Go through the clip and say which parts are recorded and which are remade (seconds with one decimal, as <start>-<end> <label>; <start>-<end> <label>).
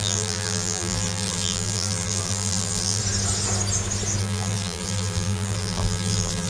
0.0-3.0 remade; 3.0-4.2 recorded; 4.2-6.5 remade